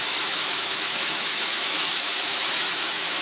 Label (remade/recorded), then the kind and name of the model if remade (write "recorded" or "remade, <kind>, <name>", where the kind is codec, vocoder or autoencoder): remade, autoencoder, DAC-VAE